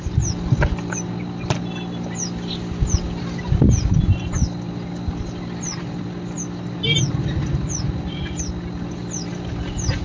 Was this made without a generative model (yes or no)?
yes